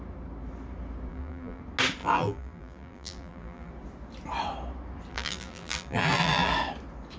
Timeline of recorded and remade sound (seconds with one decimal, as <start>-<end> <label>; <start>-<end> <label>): 0.0-1.1 recorded; 1.1-1.6 remade; 1.6-2.0 recorded; 2.0-3.7 remade; 3.7-5.1 recorded; 5.1-6.5 remade; 6.5-7.2 recorded